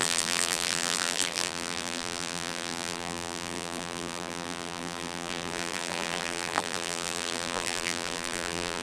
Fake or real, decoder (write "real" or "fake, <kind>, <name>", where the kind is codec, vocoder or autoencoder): fake, vocoder, BigVGAN v2